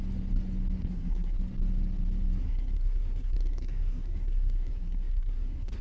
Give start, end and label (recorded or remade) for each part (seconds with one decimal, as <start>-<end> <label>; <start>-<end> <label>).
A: 0.0-0.8 recorded; 0.8-1.4 remade; 1.4-2.4 recorded; 2.4-5.8 remade